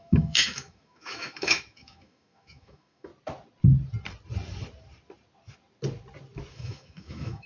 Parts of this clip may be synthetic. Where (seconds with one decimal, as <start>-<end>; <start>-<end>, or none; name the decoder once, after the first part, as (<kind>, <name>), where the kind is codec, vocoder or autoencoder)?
0.0-3.1 (autoencoder, DAC-VAE); 6.5-7.5